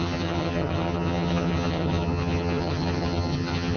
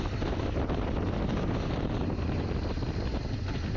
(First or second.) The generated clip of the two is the first